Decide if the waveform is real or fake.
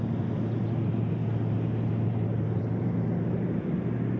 real